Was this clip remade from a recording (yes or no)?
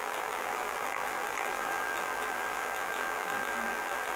yes